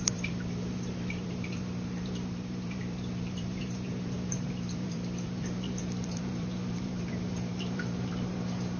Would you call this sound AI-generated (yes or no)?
yes